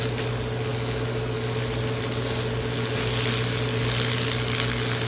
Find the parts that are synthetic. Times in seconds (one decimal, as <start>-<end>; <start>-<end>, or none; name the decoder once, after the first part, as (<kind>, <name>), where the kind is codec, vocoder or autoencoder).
none